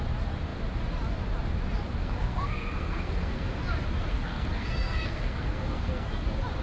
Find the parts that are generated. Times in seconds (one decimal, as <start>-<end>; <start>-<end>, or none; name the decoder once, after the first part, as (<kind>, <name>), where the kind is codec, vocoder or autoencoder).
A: 2.0-3.6 (codec, SNAC); 4.1-6.1